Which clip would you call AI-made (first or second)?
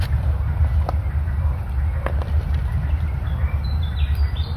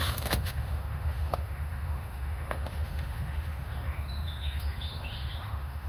second